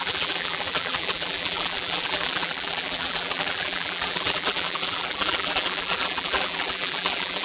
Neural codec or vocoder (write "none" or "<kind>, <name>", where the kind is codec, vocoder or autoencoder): vocoder, BigVGAN v2